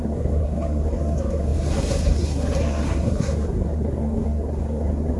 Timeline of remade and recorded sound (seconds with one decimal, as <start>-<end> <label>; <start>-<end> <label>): 0.0-5.2 remade